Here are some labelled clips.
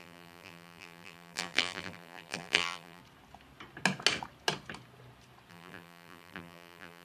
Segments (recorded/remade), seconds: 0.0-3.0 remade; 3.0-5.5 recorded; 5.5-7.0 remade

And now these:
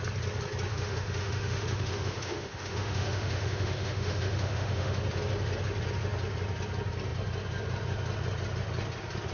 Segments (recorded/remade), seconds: 0.0-0.7 recorded; 0.7-5.0 remade; 5.0-9.3 recorded